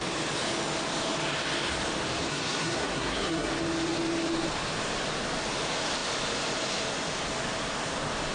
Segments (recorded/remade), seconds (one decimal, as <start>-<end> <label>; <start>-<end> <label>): 0.0-2.3 recorded; 2.3-3.5 remade; 3.5-8.3 recorded